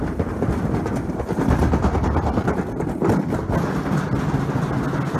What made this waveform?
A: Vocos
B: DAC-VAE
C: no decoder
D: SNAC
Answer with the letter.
C